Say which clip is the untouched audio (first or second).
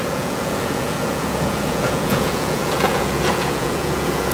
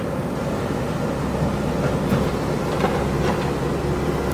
second